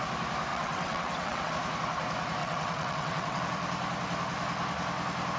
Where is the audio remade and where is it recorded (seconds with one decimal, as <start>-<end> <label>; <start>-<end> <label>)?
0.0-0.5 recorded; 0.5-1.5 remade; 1.5-2.4 recorded; 2.4-3.4 remade; 3.4-5.4 recorded